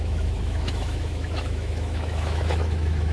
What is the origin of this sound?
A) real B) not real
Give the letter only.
B